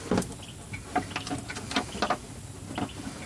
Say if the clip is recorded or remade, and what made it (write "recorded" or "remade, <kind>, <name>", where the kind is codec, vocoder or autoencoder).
recorded